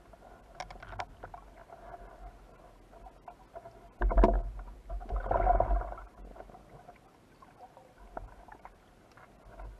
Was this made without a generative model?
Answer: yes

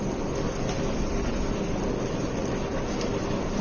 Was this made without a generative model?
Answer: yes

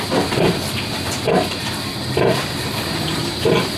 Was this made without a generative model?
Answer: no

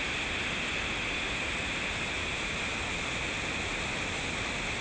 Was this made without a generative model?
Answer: yes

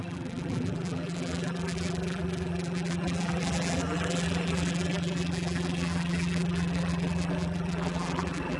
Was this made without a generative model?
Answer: no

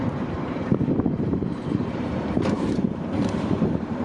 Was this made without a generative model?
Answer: no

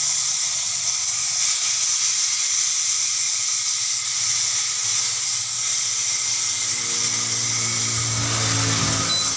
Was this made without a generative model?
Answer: yes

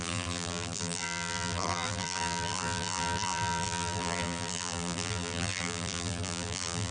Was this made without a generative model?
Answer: no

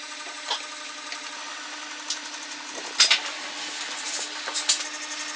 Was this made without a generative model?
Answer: yes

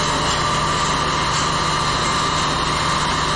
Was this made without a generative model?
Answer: yes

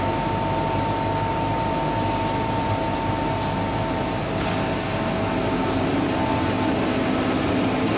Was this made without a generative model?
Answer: yes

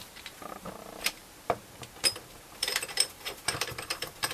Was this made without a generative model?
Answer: no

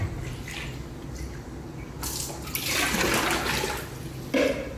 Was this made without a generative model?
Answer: yes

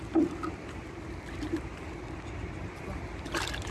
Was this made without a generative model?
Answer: yes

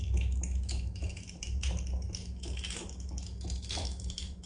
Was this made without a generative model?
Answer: no